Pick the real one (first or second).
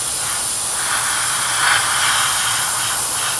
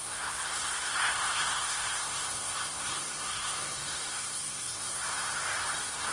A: first